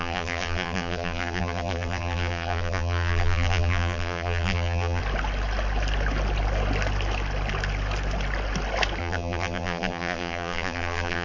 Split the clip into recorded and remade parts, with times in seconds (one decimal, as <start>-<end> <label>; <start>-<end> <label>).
0.0-5.0 remade; 5.0-9.0 recorded; 9.0-11.2 remade